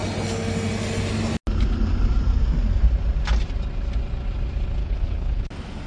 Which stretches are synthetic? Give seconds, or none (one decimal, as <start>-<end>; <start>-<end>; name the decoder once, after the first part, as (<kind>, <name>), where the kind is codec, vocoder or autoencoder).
4.8-5.5 (codec, HILCodec)